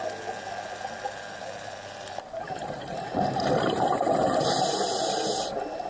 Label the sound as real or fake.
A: real